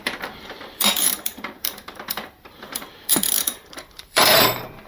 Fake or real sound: fake